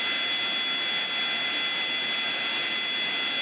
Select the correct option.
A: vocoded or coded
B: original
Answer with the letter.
B